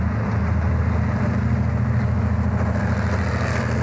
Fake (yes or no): no